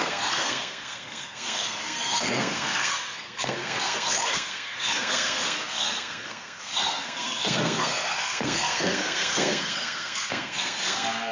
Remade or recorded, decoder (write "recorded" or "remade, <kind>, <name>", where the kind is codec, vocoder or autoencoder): remade, codec, SNAC